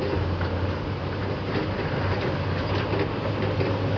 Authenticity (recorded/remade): recorded